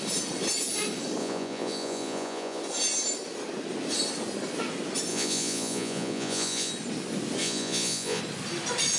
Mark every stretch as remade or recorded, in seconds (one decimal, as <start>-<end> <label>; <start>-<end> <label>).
0.0-1.2 recorded; 1.2-2.6 remade; 2.6-5.1 recorded; 5.1-6.7 remade; 6.7-7.4 recorded; 7.4-8.2 remade; 8.2-9.0 recorded